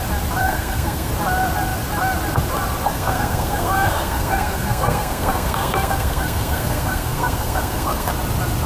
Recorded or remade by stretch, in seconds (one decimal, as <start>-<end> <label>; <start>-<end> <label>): 0.0-0.4 recorded; 0.4-1.1 remade; 1.1-2.9 recorded; 2.9-8.1 remade; 8.1-8.7 recorded